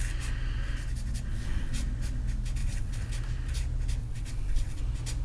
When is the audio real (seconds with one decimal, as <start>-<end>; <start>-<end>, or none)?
0.0-1.3; 1.8-2.6; 3.1-4.0; 4.8-5.2